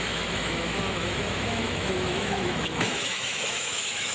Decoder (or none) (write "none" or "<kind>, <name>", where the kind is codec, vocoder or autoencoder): autoencoder, DAC-VAE